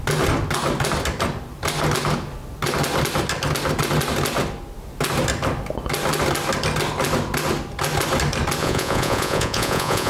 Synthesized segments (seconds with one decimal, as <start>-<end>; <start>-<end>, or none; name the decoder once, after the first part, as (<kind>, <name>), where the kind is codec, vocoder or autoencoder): 8.6-10.1 (vocoder, Vocos)